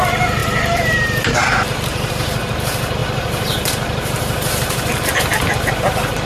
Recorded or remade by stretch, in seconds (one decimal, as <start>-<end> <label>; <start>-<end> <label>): 0.0-0.4 recorded; 0.4-0.9 remade; 0.9-1.9 recorded; 1.9-2.5 remade; 2.5-3.0 recorded; 3.0-5.1 remade; 5.1-6.3 recorded

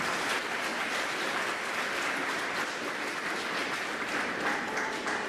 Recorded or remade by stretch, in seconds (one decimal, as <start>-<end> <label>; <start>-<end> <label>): 0.0-5.3 recorded

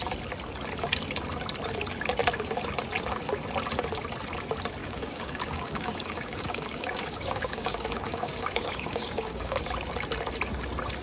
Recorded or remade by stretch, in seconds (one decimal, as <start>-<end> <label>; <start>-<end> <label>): 0.0-4.8 recorded; 4.8-9.6 remade; 9.6-11.0 recorded

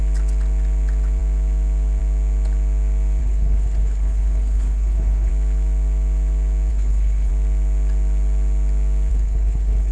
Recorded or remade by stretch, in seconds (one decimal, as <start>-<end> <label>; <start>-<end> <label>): 0.0-3.2 recorded; 3.2-5.3 remade; 5.3-6.7 recorded; 6.7-7.3 remade; 7.3-9.1 recorded; 9.1-9.9 remade

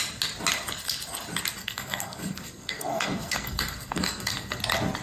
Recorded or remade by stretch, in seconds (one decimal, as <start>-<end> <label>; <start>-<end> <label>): 0.0-1.6 recorded; 1.6-4.6 remade; 4.6-5.0 recorded